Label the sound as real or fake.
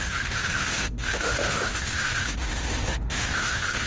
fake